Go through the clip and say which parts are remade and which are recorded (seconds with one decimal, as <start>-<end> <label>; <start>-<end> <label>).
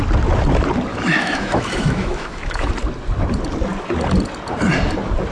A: 0.0-0.9 recorded; 0.9-2.7 remade; 2.7-5.3 recorded